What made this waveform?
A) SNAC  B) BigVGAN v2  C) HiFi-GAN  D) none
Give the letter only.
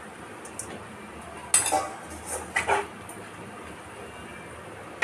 D